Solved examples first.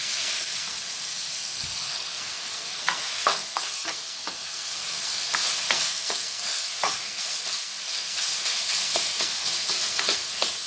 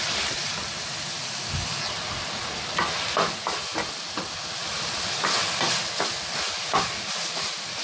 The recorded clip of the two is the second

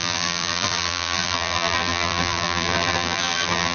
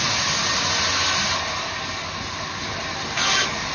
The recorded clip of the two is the second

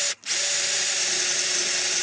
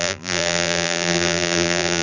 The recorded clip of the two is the first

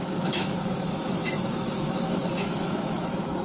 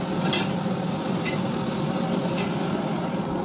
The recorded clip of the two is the second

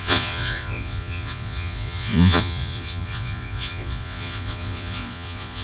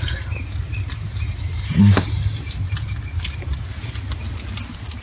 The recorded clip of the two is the second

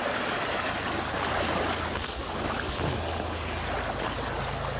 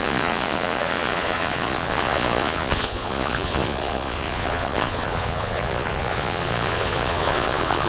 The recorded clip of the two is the first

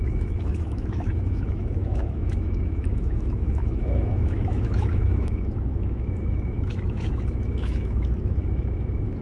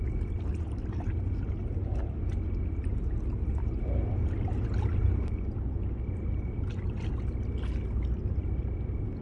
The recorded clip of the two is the second